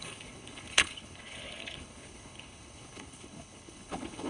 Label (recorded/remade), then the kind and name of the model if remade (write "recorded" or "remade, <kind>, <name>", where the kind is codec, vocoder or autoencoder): remade, codec, HILCodec